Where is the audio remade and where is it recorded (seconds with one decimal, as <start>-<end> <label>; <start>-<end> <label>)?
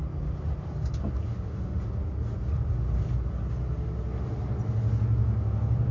0.0-1.3 recorded; 1.3-1.8 remade; 1.8-5.9 recorded